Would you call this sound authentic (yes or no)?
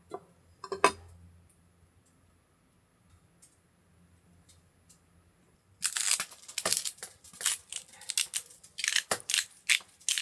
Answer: yes